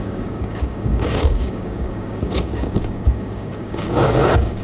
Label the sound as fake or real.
fake